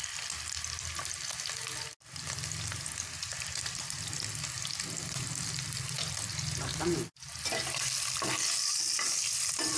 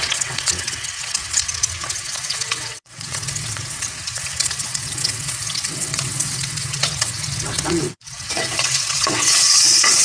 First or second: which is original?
first